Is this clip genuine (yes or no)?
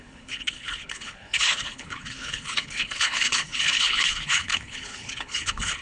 no